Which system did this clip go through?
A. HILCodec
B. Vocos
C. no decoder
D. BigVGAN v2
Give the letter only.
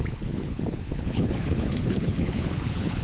A